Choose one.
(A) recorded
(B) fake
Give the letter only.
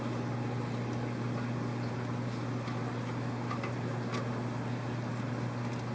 A